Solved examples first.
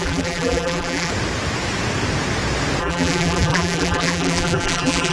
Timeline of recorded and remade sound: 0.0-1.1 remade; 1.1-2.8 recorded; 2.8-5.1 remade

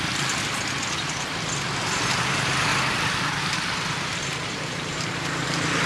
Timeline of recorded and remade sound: 0.0-0.4 remade; 0.4-2.2 recorded; 2.2-2.7 remade; 2.7-3.4 recorded; 3.4-5.9 remade

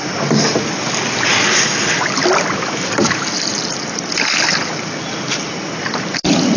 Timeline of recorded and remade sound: 0.0-6.6 recorded

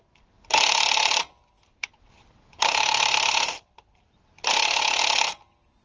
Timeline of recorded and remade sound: 0.0-1.5 recorded; 1.5-5.0 remade; 5.0-5.8 recorded

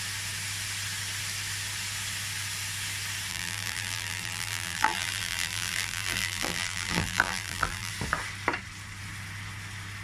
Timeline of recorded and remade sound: 0.0-3.3 recorded; 3.3-7.9 remade; 7.9-10.0 recorded